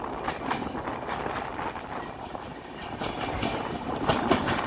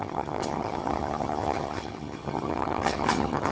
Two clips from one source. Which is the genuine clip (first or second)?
first